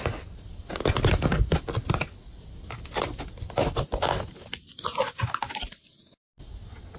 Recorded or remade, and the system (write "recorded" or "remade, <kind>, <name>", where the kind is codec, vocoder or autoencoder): recorded